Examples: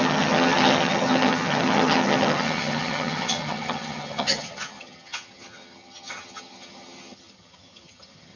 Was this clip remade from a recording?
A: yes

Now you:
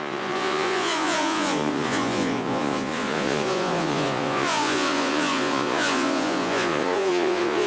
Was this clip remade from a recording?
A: yes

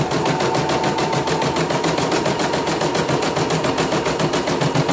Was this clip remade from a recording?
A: no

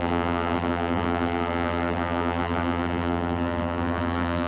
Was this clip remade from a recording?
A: yes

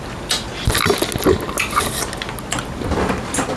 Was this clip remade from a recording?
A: no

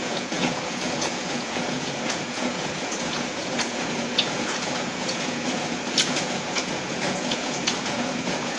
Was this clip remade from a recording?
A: yes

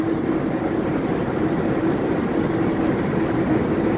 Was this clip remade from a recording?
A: no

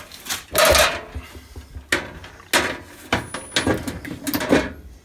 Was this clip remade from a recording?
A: no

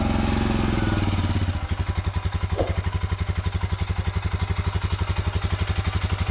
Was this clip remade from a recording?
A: no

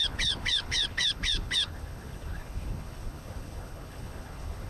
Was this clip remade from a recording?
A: yes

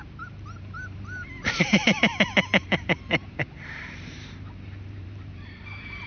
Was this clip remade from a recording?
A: yes